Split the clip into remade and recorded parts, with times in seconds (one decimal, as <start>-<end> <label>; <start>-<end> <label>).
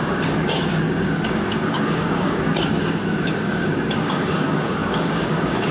0.0-5.7 remade